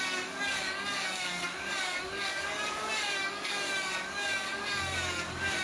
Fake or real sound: fake